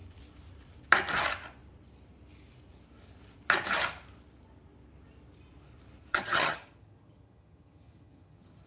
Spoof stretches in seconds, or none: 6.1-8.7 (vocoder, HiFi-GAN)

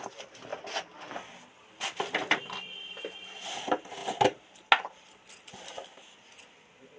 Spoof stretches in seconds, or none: none

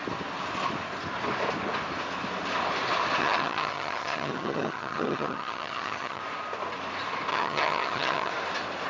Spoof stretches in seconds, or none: 3.2-6.2 (vocoder, HiFi-GAN); 7.3-8.3